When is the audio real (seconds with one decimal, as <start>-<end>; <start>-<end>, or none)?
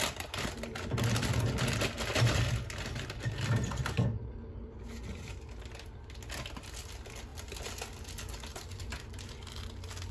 0.0-10.1